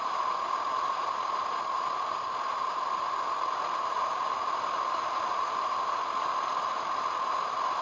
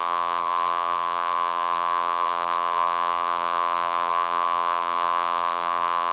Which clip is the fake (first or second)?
second